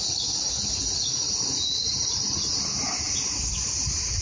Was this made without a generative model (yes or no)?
yes